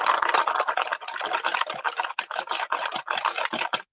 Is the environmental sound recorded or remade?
recorded